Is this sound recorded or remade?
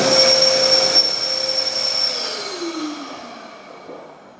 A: recorded